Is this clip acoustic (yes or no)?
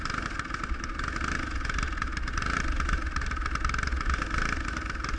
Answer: yes